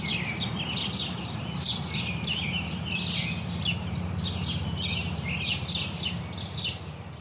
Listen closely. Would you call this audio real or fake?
real